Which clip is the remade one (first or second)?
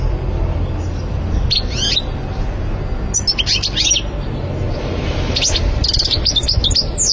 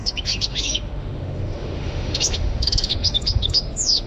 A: second